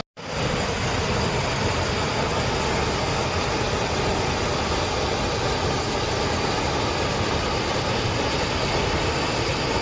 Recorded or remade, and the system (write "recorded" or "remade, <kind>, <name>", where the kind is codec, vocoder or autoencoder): recorded